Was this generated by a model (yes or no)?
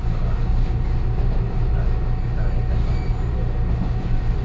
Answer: no